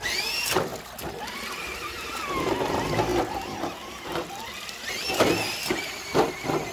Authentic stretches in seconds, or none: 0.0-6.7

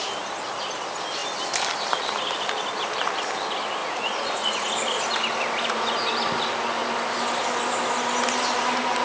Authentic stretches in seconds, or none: 0.0-3.8; 4.7-9.0

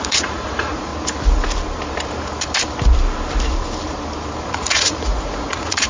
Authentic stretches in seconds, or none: 0.9-4.4

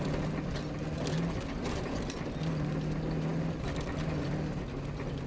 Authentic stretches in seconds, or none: 0.0-5.3

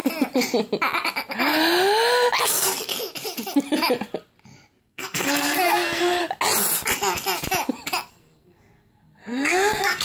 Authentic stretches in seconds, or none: 0.0-2.4; 2.9-4.8; 6.2-8.1